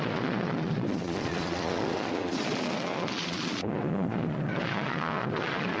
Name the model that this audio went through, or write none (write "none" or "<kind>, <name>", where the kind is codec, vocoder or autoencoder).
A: vocoder, Vocos